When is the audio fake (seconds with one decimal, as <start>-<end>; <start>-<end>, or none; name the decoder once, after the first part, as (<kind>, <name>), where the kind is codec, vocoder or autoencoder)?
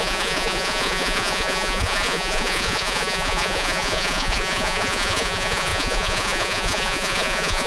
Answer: 0.0-7.7 (vocoder, Vocos)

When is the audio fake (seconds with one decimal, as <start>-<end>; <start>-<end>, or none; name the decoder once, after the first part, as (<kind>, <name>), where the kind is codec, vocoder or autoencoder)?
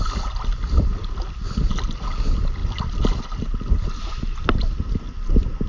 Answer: none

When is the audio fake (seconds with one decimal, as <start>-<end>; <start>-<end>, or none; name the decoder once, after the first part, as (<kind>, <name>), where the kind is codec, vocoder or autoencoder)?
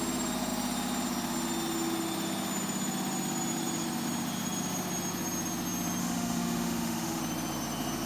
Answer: 6.0-7.2 (autoencoder, DAC-VAE)